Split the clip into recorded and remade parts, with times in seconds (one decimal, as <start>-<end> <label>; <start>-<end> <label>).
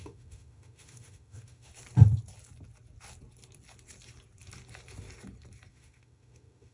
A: 0.0-1.7 remade; 1.7-5.7 recorded; 5.7-6.7 remade